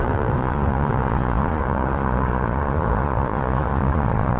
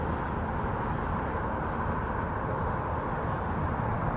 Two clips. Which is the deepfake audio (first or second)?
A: first